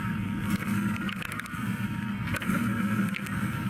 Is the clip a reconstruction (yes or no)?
yes